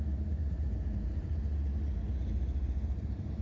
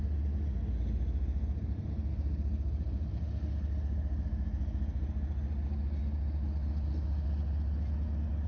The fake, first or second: first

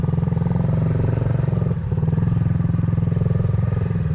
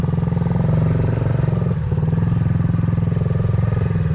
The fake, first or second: first